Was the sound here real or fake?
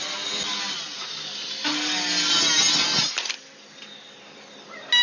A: real